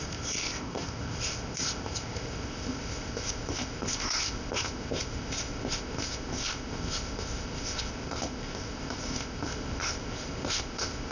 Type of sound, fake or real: fake